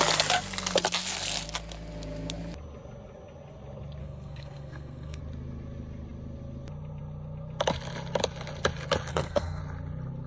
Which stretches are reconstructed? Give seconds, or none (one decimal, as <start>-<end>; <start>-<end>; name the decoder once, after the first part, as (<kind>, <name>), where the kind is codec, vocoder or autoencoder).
4.0-5.2 (codec, SNAC); 9.1-9.6